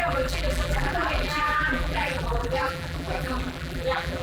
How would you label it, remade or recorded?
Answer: remade